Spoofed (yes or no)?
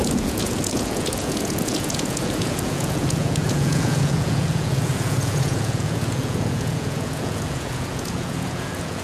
yes